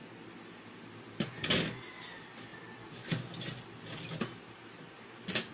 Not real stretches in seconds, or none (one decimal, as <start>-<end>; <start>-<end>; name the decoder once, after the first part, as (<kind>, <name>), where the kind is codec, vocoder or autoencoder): none